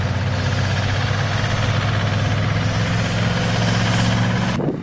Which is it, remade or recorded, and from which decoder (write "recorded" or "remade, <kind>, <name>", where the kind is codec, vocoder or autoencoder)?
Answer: recorded